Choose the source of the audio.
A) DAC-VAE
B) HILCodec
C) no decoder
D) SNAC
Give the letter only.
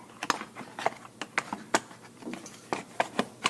C